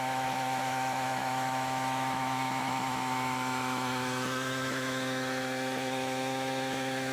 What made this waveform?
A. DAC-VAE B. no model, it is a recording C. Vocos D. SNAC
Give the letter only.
A